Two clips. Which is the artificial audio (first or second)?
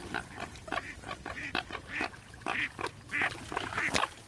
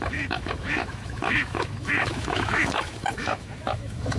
second